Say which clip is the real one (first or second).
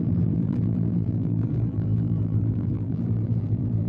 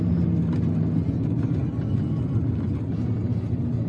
second